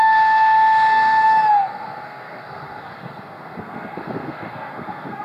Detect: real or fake fake